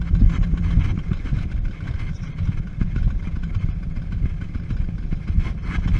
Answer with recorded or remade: recorded